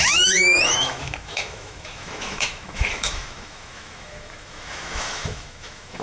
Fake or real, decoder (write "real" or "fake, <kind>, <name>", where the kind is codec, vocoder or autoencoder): fake, autoencoder, DAC-VAE